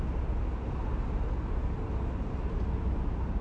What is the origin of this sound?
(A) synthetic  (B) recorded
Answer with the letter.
B